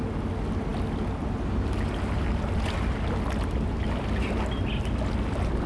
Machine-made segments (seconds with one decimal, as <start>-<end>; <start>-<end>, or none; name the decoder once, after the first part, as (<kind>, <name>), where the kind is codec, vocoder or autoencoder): none